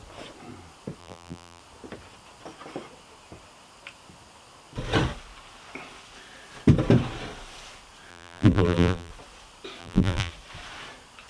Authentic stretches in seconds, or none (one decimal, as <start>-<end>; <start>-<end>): 0.0-1.0; 1.6-8.1; 9.1-9.8; 10.3-11.3